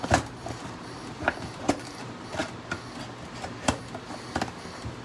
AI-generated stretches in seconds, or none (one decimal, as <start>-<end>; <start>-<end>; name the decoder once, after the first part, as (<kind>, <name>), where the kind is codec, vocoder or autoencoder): none